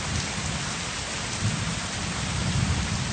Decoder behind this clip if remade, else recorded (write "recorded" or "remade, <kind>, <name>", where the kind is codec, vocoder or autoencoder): recorded